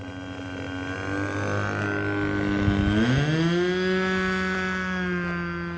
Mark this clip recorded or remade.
recorded